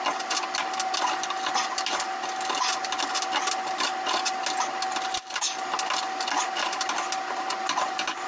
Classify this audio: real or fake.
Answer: real